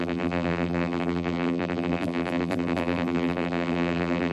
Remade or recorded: remade